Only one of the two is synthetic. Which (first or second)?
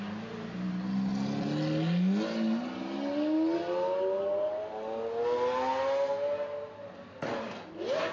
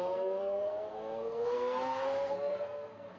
second